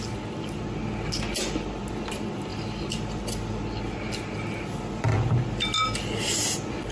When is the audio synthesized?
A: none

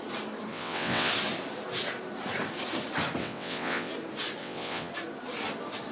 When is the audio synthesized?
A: 0.5-1.1; 3.2-3.9; 4.4-4.9

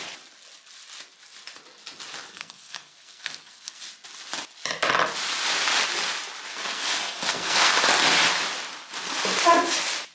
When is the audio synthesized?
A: 2.3-3.8; 6.5-7.7

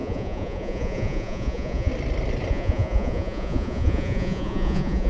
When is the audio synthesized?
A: 0.0-1.9; 2.5-5.1